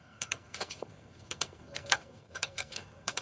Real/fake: fake